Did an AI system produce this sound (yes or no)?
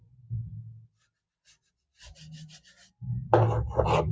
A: no